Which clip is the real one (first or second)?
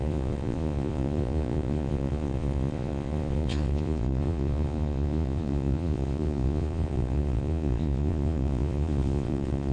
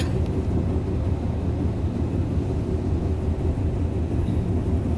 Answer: second